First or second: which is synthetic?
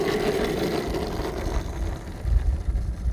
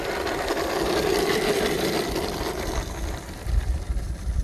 second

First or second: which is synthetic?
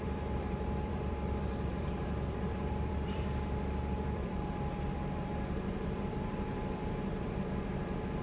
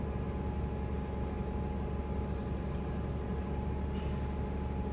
first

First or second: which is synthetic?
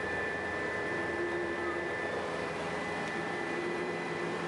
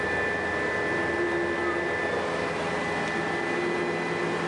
first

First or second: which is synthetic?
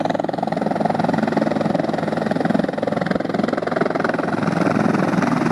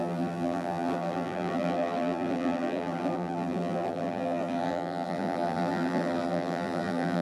second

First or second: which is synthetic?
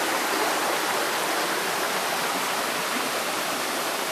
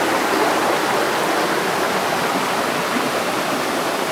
first